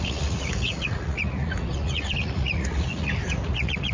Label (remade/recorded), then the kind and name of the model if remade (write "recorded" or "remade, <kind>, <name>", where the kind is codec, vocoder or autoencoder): remade, vocoder, Vocos